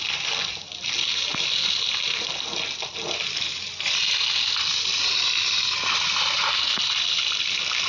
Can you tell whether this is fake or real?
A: real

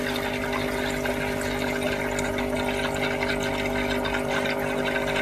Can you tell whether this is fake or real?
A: real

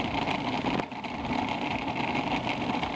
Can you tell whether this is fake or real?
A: real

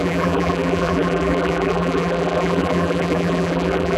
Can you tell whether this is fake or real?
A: fake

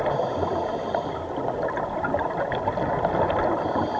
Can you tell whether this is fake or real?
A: fake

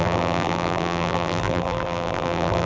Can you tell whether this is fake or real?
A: fake